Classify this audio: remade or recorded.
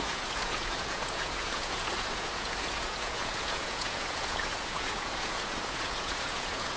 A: remade